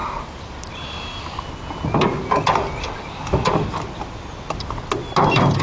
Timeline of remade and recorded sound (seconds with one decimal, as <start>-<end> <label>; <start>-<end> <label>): 0.0-5.6 recorded